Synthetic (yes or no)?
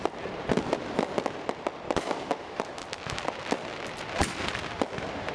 no